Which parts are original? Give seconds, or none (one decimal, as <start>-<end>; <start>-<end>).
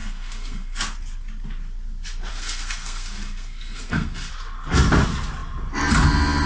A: 0.8-2.3; 4.3-6.5